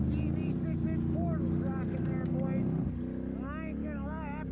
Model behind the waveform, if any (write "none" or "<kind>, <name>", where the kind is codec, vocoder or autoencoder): none